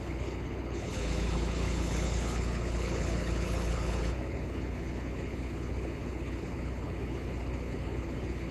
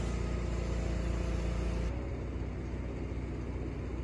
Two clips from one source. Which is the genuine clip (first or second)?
second